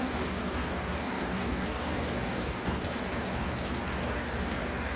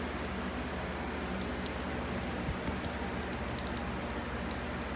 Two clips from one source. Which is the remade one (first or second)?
first